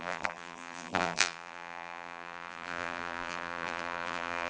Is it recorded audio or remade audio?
remade